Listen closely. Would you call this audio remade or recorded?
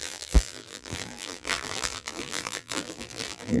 remade